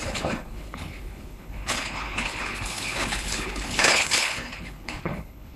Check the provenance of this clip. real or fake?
fake